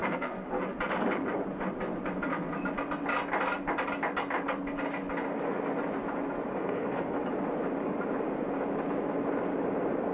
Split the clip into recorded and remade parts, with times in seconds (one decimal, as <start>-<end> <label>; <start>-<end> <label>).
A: 0.0-0.6 remade; 0.6-6.5 recorded; 6.5-7.2 remade; 7.2-10.1 recorded